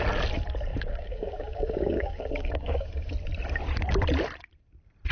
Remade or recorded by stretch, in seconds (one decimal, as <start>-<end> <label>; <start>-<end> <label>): 0.0-0.7 recorded; 0.7-3.1 remade; 3.1-5.1 recorded